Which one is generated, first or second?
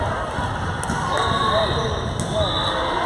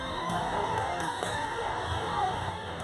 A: second